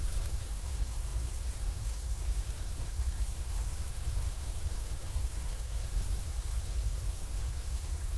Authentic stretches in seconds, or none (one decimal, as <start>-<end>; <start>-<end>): none